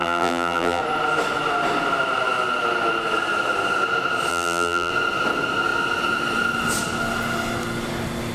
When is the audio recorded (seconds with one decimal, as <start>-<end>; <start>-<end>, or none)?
0.8-4.3; 4.9-8.3